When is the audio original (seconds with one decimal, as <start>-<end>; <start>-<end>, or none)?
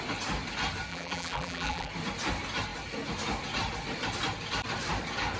0.0-0.9; 1.9-5.4